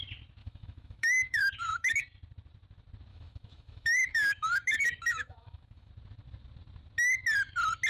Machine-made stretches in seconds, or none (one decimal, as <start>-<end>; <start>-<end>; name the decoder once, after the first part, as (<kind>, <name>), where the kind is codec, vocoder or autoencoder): 0.4-2.0 (autoencoder, DAC-VAE); 3.1-5.9